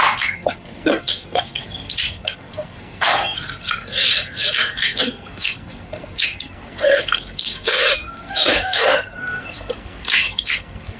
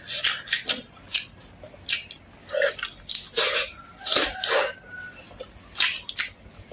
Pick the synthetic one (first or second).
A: first